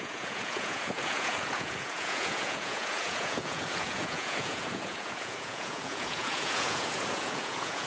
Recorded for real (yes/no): no